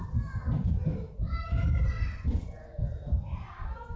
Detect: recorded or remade recorded